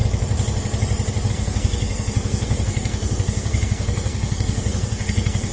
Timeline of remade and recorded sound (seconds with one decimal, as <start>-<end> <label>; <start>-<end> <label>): 0.0-1.3 recorded; 1.3-5.5 remade